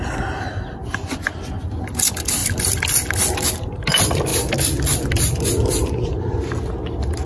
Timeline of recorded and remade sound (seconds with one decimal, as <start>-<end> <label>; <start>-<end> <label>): 0.0-7.3 recorded